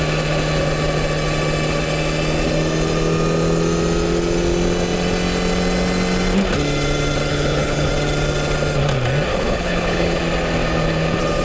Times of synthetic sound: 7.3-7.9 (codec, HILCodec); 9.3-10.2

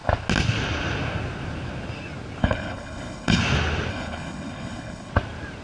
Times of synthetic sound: 2.4-3.4 (codec, HILCodec); 3.9-5.1

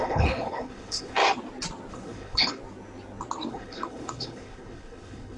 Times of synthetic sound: 0.0-1.2 (codec, HILCodec); 1.9-2.6; 3.5-5.4

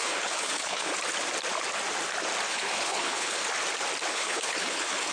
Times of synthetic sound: 0.0-0.9 (codec, HILCodec); 2.5-3.4; 4.1-5.1